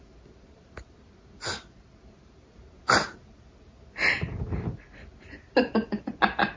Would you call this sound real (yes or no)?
yes